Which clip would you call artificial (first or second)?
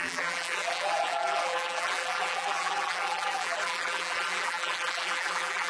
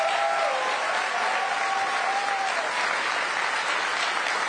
first